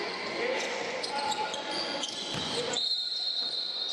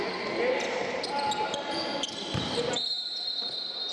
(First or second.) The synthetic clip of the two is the first